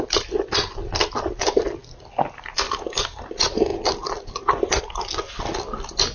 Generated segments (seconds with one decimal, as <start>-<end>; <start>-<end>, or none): none